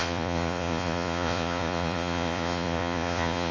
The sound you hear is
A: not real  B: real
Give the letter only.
A